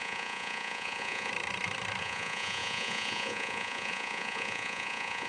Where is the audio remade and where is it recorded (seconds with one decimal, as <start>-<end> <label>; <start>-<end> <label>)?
0.0-1.3 remade; 1.3-2.0 recorded; 2.0-5.3 remade